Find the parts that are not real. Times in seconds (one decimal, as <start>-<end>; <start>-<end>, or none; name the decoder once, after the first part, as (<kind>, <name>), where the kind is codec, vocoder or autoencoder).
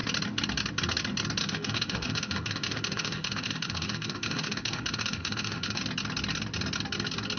1.4-5.8 (autoencoder, DAC-VAE)